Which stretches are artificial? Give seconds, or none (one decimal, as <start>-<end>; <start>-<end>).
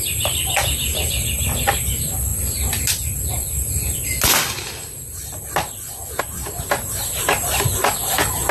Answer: 0.9-1.9